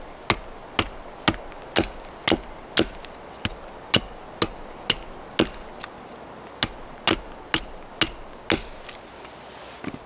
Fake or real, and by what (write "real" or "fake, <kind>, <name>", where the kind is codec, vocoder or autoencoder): real